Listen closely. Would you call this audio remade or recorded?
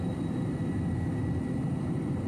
recorded